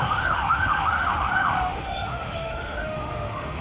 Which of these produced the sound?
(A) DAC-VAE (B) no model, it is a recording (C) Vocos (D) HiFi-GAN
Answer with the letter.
A